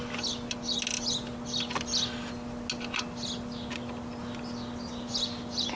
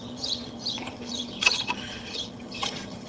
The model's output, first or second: second